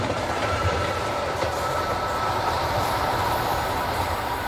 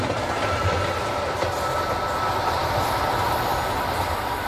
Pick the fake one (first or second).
first